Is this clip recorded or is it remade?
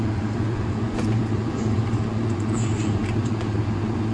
remade